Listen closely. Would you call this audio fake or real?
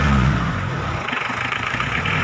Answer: fake